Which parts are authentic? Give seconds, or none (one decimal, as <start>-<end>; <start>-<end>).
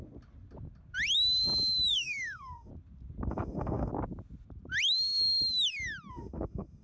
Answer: 0.0-1.9; 2.7-3.3; 3.9-6.1